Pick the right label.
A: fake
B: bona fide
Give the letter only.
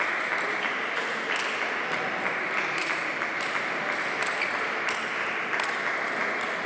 B